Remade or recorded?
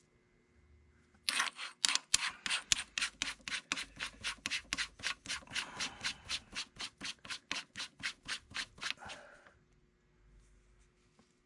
recorded